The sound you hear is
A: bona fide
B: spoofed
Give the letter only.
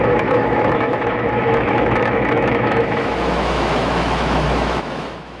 B